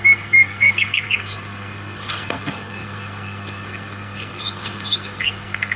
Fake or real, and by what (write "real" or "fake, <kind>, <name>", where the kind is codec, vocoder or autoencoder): fake, codec, SNAC